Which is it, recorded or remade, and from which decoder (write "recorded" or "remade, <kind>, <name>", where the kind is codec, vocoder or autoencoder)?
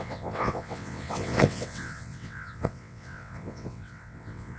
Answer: remade, vocoder, WaveNeXt